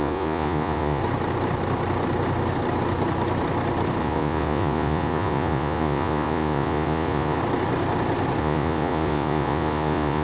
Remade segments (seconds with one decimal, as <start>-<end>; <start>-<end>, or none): 0.0-1.0; 4.0-7.4; 8.4-10.2